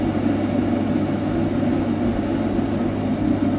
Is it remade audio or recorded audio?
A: recorded